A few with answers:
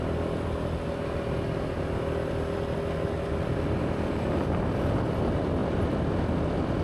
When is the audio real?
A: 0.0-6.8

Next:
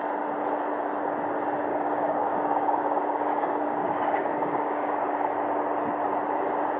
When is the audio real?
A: 0.0-1.7; 5.0-6.8

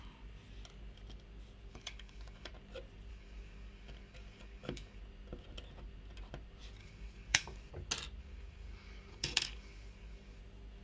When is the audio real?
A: 0.0-1.7; 2.5-3.1; 5.0-6.8; 7.7-8.2; 10.4-10.8

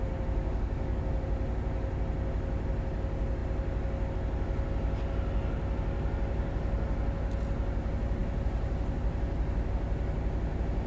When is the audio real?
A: 0.0-0.4; 1.0-10.9

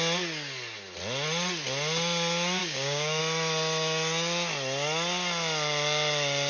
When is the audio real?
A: 0.0-2.6; 3.2-6.5

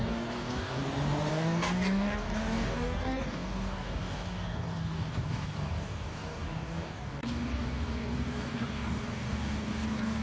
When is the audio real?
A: 0.8-1.3

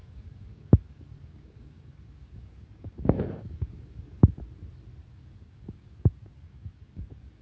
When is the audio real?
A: 4.4-5.1

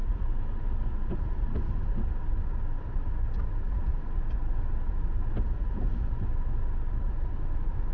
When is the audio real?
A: 0.0-7.9